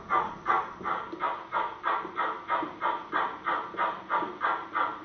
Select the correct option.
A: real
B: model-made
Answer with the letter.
A